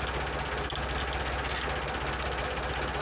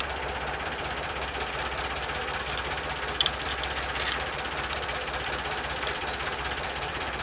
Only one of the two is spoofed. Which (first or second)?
second